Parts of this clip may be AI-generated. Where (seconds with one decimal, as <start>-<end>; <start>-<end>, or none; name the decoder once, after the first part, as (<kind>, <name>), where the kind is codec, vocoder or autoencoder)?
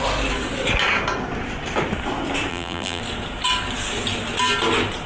2.5-3.0 (vocoder, BigVGAN v2)